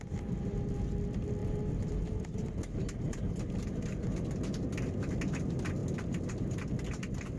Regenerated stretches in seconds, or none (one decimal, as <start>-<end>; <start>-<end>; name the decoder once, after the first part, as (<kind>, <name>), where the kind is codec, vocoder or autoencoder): 2.7-3.8 (vocoder, BigVGAN v2)